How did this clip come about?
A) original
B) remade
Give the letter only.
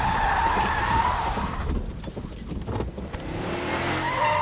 A